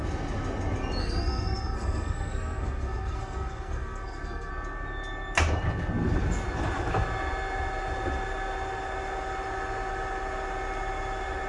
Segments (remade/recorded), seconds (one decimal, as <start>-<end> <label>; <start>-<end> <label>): 0.0-1.0 recorded; 1.0-4.5 remade; 4.5-11.5 recorded